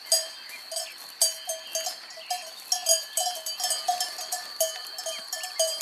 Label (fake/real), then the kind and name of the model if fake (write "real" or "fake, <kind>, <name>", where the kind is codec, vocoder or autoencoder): real